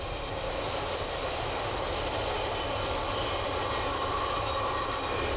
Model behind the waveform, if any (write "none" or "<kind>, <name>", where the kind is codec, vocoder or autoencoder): none